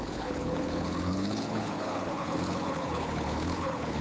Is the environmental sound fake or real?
fake